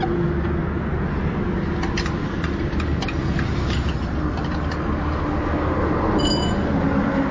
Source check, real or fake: real